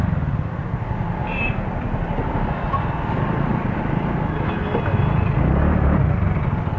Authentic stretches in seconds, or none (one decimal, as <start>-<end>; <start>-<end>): 0.0-6.8